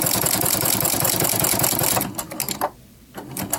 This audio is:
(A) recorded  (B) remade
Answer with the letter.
A